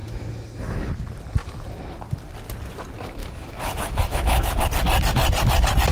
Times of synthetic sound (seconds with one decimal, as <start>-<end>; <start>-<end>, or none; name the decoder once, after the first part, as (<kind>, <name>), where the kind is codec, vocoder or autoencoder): 0.0-0.9 (autoencoder, DAC-VAE); 3.2-4.6